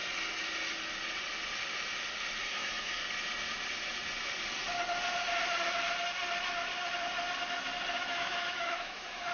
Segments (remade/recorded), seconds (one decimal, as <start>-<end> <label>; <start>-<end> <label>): 0.0-2.4 recorded; 2.4-3.0 remade; 3.0-7.9 recorded; 7.9-9.3 remade